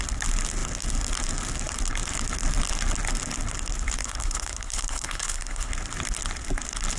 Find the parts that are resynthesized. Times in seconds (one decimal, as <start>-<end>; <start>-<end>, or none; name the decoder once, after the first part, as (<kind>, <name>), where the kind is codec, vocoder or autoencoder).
4.0-5.7 (codec, HILCodec)